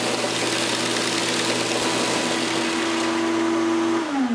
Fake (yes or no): no